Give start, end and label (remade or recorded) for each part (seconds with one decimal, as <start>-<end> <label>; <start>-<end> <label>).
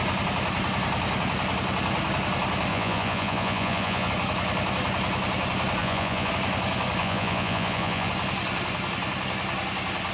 0.0-2.7 recorded; 2.7-4.1 remade; 4.1-5.8 recorded; 5.8-6.3 remade; 6.3-7.0 recorded; 7.0-8.1 remade; 8.1-10.1 recorded